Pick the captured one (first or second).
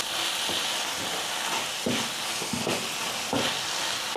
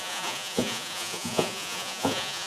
first